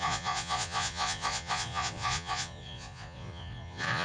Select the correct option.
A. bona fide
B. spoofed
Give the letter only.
B